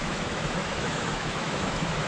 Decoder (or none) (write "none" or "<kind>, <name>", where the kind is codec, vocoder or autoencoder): autoencoder, DAC-VAE